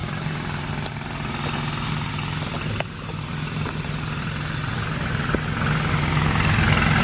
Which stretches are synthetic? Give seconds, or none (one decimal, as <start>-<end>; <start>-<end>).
none